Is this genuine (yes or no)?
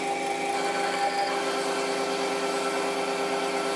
yes